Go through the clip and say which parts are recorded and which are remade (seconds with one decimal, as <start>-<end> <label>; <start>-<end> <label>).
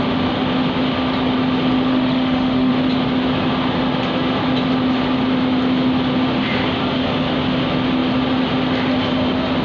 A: 0.0-1.9 recorded; 1.9-2.7 remade; 2.7-9.6 recorded